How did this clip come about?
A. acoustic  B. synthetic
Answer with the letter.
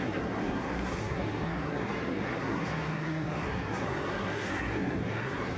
B